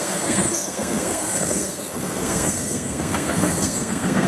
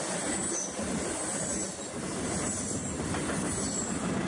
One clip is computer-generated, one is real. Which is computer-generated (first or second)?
first